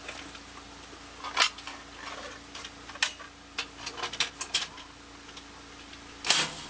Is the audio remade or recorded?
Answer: recorded